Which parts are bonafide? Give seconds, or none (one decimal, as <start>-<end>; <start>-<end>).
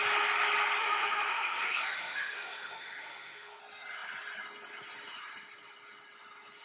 0.0-0.8; 3.6-6.6